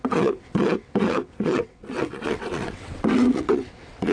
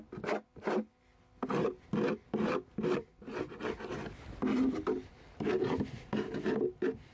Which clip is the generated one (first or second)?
first